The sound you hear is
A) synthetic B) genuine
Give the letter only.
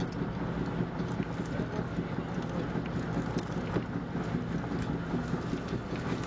B